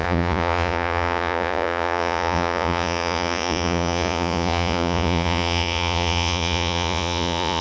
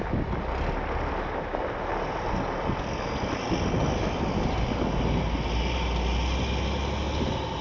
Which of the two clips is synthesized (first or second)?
first